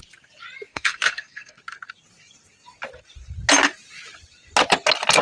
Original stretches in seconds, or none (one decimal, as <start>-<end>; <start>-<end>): 0.0-0.7; 1.6-5.2

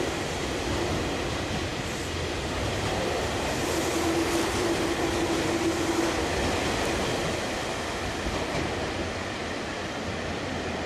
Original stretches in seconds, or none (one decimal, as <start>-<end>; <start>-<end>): 0.0-10.9

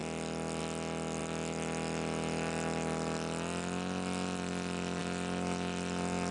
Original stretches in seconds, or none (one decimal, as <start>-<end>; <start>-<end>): 0.0-6.3

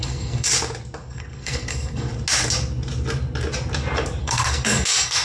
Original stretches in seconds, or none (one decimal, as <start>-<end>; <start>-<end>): 0.5-1.1; 2.1-4.2

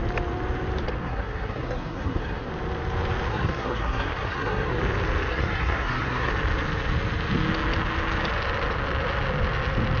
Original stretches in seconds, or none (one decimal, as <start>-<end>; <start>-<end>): 0.0-1.0; 2.5-3.3; 4.8-5.3; 6.3-10.0

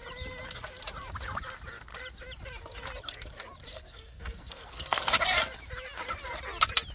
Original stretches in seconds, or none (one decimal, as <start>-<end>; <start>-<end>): 0.0-3.7; 5.0-6.9